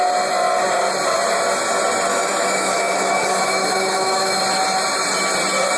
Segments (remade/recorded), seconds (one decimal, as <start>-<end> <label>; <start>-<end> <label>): 0.0-2.1 recorded; 2.1-4.4 remade; 4.4-5.8 recorded